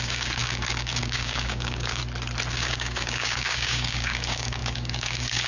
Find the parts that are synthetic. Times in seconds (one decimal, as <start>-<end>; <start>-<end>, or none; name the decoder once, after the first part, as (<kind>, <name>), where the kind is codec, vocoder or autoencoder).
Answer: 0.0-2.0 (codec, DAC); 2.5-5.5